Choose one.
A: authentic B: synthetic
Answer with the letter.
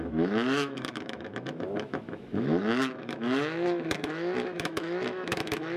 B